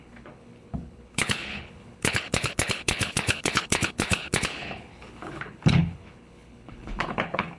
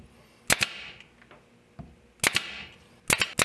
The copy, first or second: first